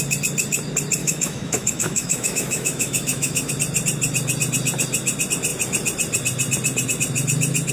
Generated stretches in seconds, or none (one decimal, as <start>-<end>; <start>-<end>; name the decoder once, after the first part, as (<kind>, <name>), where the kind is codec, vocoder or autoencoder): 1.0-3.5 (autoencoder, DAC-VAE)